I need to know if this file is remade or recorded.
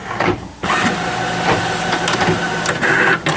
recorded